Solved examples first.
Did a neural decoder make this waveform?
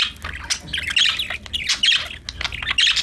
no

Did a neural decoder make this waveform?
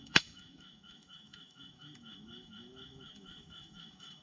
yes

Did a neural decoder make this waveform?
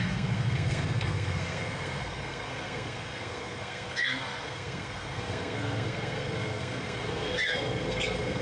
yes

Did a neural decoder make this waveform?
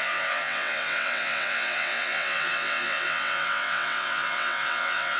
yes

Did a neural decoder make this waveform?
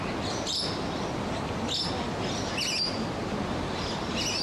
no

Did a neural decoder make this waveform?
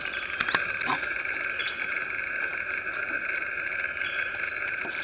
no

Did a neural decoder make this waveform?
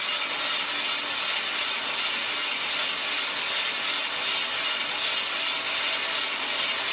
no